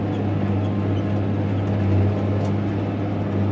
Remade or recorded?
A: recorded